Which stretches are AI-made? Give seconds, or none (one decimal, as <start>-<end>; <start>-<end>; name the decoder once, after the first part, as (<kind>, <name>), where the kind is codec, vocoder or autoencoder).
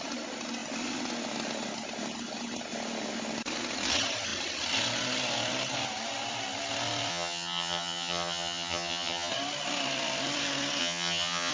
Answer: 7.1-9.3 (vocoder, HiFi-GAN); 10.8-11.5